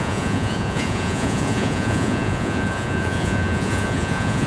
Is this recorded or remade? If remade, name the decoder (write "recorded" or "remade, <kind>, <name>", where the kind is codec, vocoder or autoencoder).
remade, vocoder, Vocos